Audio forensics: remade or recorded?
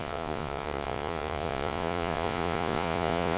remade